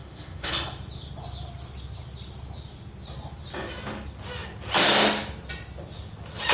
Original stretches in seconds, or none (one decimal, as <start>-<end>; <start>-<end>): 0.5-6.5